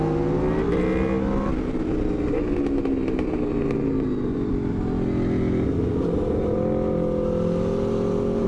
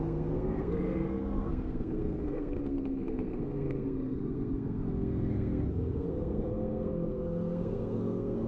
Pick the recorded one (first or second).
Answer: first